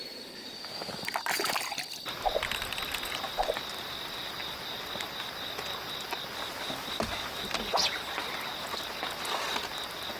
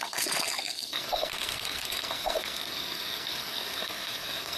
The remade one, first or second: second